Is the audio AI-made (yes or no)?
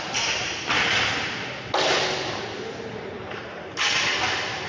no